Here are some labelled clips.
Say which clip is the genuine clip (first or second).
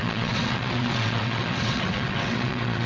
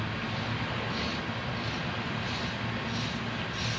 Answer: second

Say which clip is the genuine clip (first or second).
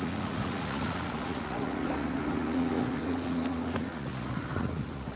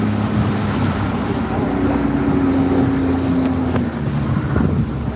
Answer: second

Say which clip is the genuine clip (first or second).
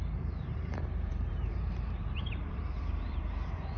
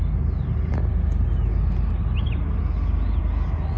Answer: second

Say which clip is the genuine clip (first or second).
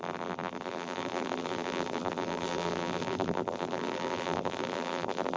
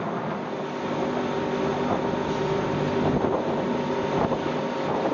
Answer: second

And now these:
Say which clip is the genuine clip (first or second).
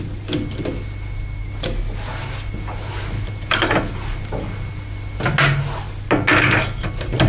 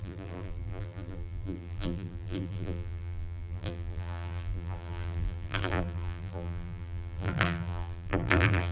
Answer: first